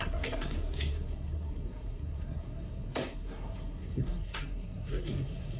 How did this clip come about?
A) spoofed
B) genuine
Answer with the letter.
A